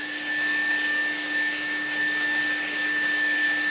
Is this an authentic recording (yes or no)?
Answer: no